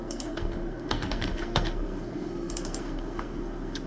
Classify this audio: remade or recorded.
remade